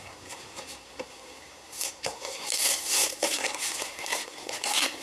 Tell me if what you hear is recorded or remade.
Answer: remade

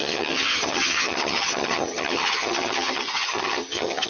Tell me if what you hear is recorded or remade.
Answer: remade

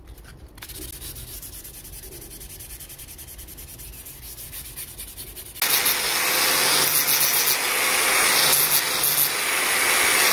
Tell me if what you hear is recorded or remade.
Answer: recorded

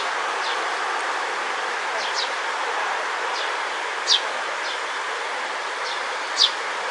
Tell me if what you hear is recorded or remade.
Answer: recorded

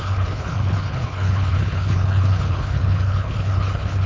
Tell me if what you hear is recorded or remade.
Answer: remade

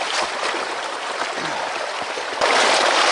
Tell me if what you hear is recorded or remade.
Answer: recorded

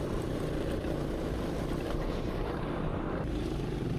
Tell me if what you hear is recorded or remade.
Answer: remade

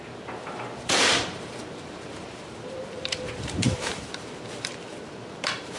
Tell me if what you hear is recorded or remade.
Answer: remade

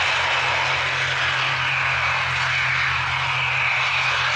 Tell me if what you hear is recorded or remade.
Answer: recorded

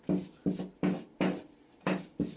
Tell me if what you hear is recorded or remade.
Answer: recorded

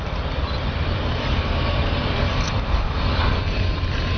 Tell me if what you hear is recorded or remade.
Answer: remade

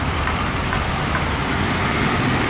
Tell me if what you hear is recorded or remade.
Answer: recorded